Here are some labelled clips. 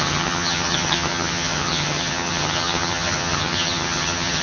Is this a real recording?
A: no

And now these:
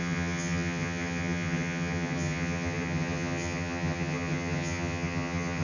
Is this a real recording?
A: no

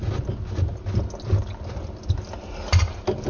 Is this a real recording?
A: yes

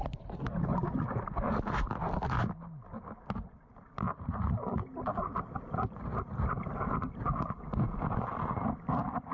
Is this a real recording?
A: yes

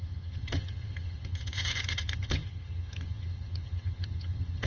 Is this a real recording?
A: no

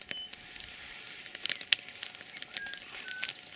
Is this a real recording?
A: yes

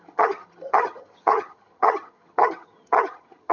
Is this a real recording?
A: no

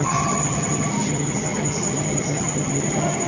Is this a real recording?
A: no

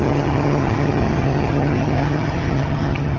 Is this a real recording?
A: no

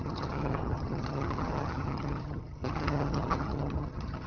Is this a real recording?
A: no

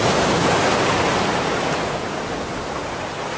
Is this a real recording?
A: yes